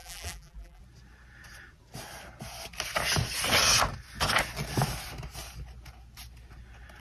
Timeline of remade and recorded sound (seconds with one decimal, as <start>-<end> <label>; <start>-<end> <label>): 0.0-0.8 remade; 0.8-7.0 recorded